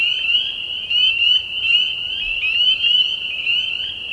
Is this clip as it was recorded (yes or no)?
no